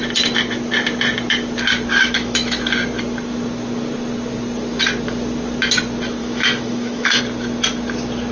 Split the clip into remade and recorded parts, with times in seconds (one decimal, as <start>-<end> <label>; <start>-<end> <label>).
0.0-1.9 recorded; 1.9-2.6 remade; 2.6-6.2 recorded; 6.2-7.2 remade; 7.2-8.3 recorded